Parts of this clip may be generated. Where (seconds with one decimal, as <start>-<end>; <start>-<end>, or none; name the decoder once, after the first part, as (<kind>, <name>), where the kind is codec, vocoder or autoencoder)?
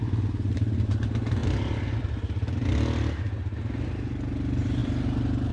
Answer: none